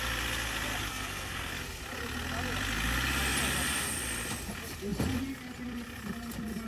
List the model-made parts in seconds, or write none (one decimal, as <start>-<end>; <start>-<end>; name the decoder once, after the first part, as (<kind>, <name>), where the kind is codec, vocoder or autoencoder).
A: 0.9-1.5 (codec, SNAC)